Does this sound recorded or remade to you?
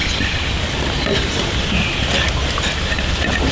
recorded